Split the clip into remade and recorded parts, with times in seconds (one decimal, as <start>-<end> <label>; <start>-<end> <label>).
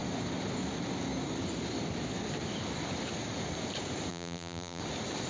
0.0-4.1 recorded; 4.1-4.8 remade; 4.8-5.3 recorded